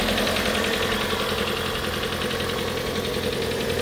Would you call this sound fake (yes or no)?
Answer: no